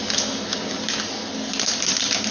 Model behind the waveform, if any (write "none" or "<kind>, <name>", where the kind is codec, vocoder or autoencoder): none